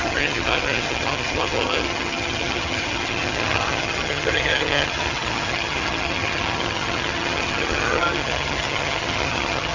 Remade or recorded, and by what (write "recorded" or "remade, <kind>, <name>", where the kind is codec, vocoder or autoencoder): remade, vocoder, HiFi-GAN